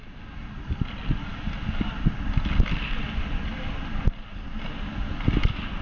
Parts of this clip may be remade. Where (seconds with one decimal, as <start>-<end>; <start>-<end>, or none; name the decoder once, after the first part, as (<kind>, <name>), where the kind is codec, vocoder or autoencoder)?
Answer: none